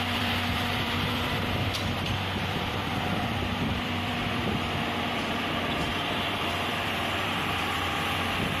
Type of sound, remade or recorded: remade